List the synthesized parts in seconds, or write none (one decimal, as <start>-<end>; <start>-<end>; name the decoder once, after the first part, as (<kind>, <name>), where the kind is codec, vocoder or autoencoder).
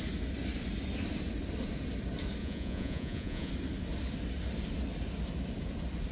2.4-3.5 (vocoder, Vocos)